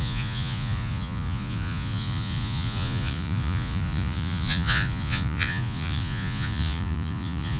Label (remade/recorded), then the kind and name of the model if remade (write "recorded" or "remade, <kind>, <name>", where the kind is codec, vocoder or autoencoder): remade, vocoder, Vocos